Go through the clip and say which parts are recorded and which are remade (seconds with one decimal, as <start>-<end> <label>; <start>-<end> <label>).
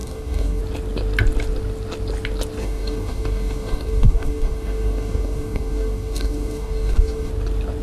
0.0-0.6 remade; 0.6-2.6 recorded; 2.6-7.3 remade; 7.3-7.8 recorded